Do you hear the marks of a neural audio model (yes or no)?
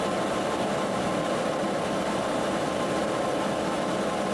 no